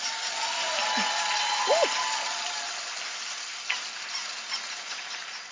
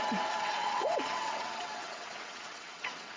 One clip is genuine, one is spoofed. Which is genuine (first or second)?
first